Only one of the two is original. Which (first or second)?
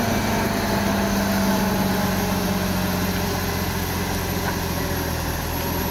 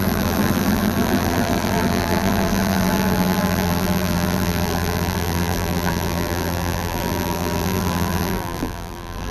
first